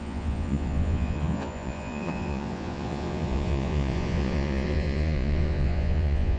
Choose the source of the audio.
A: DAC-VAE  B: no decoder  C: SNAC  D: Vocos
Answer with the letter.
D